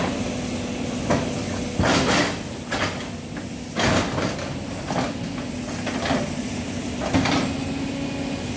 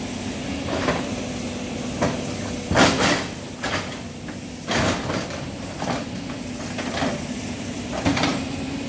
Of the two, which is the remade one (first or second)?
second